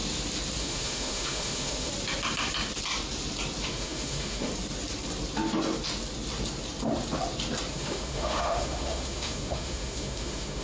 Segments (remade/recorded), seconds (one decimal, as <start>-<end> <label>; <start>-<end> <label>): 0.0-0.6 recorded; 0.6-1.9 remade; 1.9-3.6 recorded; 3.6-4.5 remade; 4.5-7.7 recorded; 7.7-10.6 remade

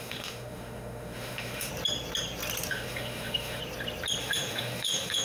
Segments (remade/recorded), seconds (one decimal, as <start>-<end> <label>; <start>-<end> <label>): 0.0-1.7 remade; 1.7-2.7 recorded; 2.7-3.6 remade; 3.6-4.2 recorded; 4.2-5.2 remade

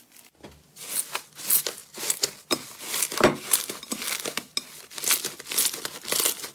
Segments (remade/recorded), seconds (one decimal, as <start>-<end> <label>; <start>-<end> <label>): 0.0-6.5 recorded

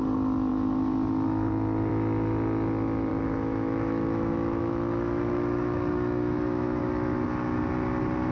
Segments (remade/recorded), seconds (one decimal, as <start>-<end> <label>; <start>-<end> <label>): 0.0-3.1 recorded; 3.1-6.8 remade; 6.8-8.3 recorded